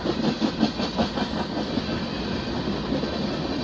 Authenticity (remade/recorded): recorded